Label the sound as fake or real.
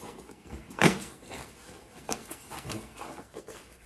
fake